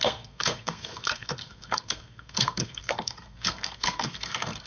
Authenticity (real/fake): fake